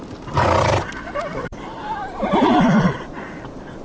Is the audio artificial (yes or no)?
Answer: yes